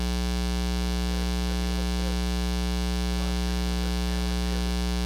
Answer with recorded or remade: recorded